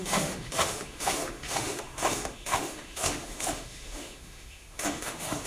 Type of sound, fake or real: fake